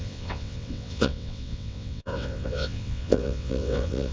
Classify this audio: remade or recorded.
remade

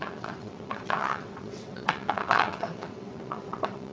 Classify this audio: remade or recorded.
remade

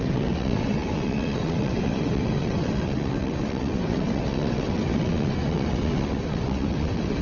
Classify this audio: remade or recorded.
remade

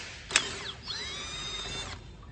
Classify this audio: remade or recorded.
recorded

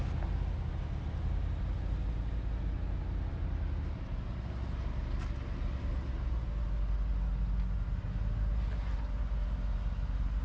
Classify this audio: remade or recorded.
recorded